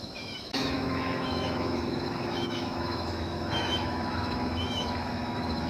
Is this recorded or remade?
remade